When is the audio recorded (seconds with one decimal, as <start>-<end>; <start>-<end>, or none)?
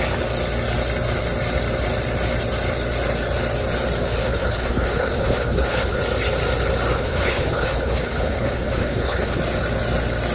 0.0-4.2; 6.0-6.9; 9.4-10.3